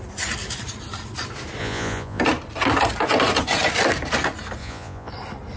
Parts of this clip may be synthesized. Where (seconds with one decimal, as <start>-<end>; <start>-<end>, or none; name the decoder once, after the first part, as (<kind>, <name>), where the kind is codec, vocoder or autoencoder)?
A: 1.6-2.2 (vocoder, Vocos); 4.6-5.1